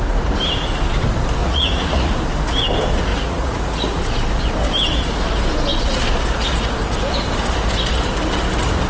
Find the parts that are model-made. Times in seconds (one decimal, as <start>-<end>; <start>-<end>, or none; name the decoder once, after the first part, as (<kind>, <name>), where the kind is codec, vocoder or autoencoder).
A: 1.4-2.1 (vocoder, Vocos); 3.1-4.0